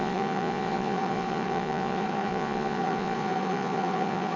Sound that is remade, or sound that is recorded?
remade